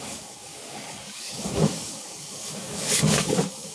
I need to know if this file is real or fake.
fake